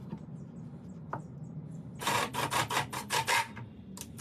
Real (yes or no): yes